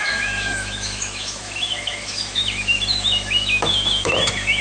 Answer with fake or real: fake